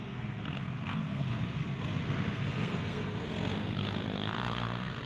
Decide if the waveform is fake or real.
fake